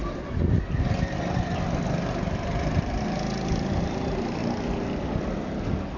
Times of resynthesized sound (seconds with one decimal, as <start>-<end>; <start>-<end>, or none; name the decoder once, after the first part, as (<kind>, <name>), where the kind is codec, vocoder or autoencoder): none

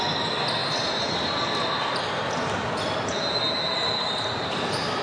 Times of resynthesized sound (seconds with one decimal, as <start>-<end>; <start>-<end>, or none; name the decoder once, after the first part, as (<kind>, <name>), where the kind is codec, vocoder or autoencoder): none

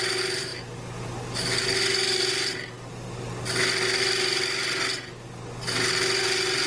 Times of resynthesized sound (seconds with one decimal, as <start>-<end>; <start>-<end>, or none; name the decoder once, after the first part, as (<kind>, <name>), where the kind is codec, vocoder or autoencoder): none

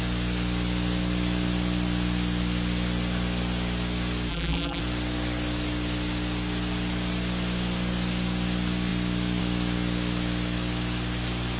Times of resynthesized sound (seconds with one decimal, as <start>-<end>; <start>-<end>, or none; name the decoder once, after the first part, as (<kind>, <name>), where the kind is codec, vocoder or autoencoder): 4.3-4.8 (vocoder, BigVGAN v2)

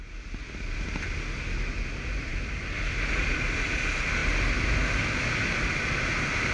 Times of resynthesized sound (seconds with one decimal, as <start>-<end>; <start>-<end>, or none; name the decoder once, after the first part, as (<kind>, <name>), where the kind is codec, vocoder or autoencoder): none

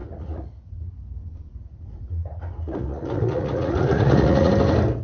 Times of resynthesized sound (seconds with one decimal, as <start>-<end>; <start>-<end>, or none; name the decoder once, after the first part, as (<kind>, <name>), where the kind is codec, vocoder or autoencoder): 0.0-0.9 (vocoder, Vocos); 1.5-4.5

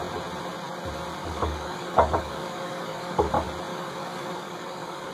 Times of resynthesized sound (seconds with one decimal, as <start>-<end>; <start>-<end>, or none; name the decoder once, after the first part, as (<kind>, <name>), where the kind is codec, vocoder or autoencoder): 1.2-3.3 (codec, DAC); 3.7-5.1